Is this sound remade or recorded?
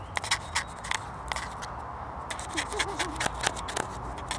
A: recorded